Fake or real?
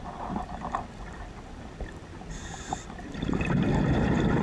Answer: real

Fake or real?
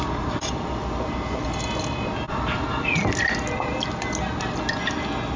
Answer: real